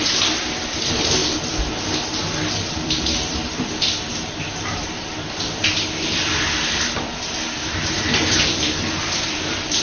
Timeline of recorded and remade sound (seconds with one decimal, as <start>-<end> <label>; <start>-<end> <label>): 0.0-9.8 remade